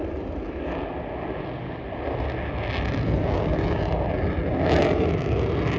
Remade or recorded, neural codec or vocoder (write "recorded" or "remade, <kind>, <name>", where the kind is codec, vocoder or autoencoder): recorded